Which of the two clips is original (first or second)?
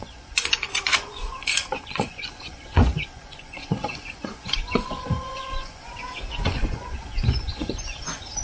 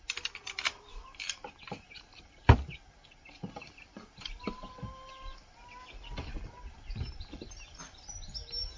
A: second